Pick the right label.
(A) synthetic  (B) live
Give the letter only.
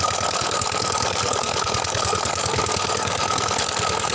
A